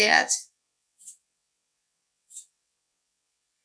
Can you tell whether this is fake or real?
fake